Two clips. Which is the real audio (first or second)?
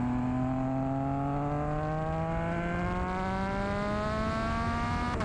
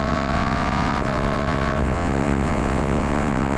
first